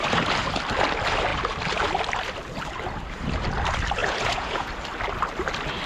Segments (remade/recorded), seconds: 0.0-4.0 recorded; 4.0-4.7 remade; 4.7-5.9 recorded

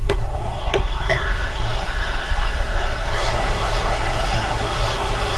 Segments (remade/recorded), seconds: 0.0-5.4 remade